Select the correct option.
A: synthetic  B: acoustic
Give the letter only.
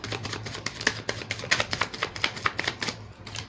A